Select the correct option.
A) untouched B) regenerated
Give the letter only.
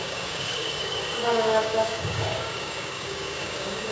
B